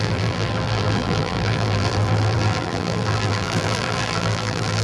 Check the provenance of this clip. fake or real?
fake